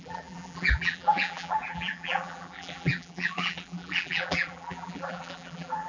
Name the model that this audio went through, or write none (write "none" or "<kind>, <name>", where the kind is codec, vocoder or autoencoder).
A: vocoder, BigVGAN v2